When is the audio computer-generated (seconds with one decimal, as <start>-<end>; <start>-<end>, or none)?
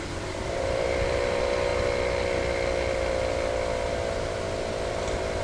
0.0-1.7; 4.9-5.4